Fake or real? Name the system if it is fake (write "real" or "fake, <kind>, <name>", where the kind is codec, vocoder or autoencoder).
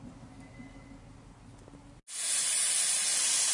real